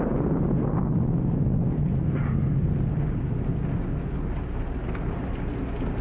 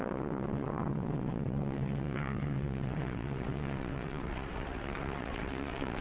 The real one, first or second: first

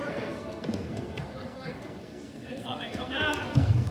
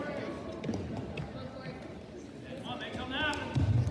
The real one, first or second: second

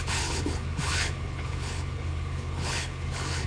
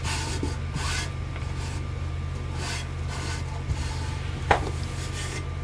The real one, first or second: second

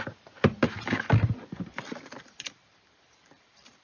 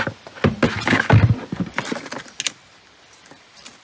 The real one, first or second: second